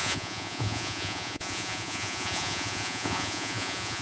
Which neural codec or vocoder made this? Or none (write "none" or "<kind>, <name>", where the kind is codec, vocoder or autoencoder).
vocoder, Vocos